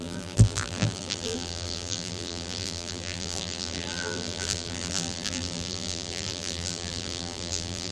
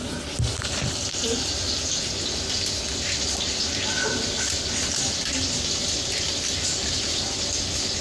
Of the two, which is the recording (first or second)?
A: second